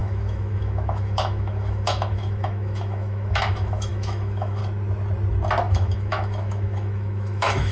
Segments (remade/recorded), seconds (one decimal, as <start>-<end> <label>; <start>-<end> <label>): 0.0-4.6 remade; 4.6-5.7 recorded; 5.7-7.7 remade

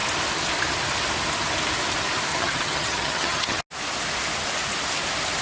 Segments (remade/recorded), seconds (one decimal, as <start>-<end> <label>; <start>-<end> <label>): 0.0-2.3 recorded; 2.3-3.6 remade; 3.6-5.4 recorded

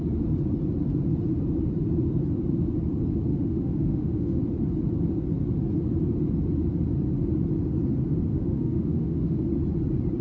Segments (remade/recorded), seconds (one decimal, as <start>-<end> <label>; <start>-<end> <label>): 0.0-3.3 recorded; 3.3-4.4 remade; 4.4-8.3 recorded; 8.3-9.4 remade; 9.4-10.2 recorded

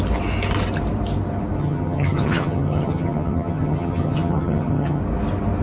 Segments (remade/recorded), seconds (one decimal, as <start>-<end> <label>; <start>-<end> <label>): 0.0-1.6 recorded; 1.6-5.0 remade; 5.0-5.6 recorded

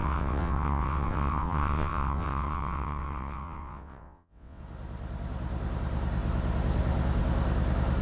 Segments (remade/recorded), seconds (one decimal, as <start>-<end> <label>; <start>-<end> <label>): 0.0-4.6 remade; 4.6-8.0 recorded